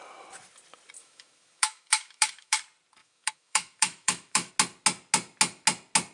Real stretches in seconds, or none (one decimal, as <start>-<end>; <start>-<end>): 0.0-1.0; 2.6-3.0; 4.5-6.1